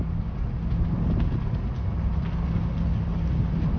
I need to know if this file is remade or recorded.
recorded